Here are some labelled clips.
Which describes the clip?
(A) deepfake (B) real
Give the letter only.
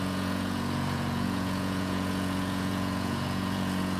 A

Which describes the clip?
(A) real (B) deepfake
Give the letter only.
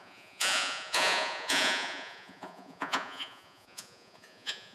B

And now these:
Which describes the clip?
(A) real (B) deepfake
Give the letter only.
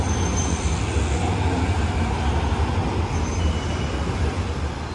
A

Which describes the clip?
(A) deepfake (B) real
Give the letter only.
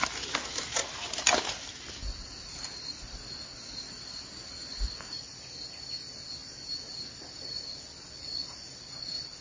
B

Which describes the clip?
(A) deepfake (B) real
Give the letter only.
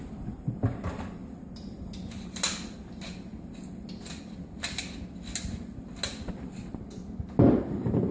B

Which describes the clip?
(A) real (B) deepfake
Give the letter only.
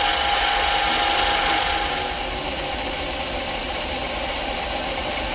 A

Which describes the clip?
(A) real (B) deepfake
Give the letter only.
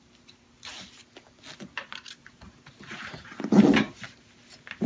A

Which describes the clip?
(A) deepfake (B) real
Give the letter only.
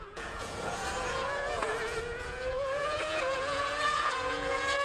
A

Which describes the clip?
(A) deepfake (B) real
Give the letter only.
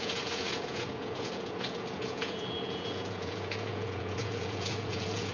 A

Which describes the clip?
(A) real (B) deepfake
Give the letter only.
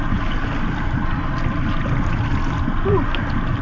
A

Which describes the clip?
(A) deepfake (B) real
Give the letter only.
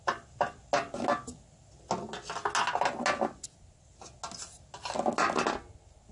B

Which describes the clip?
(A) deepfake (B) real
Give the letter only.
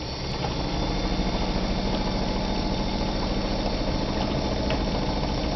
B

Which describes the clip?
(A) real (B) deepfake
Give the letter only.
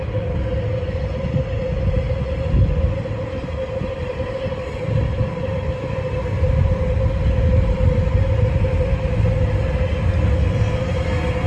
A